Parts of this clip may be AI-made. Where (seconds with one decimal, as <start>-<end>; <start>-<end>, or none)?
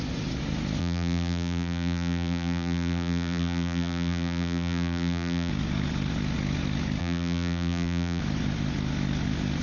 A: 0.8-5.5; 7.0-8.2